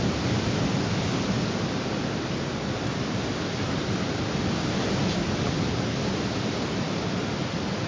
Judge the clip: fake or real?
real